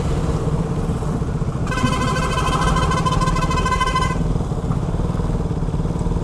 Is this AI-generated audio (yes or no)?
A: no